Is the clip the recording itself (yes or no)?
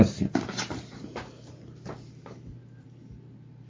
yes